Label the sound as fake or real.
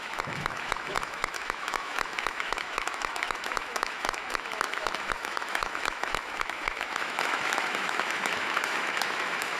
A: fake